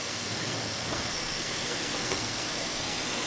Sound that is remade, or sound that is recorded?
remade